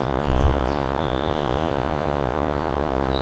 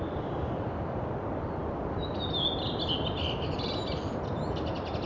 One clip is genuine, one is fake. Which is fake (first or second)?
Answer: first